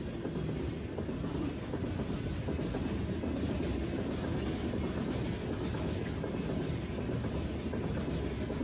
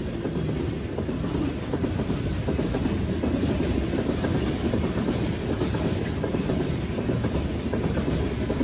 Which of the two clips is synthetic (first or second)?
second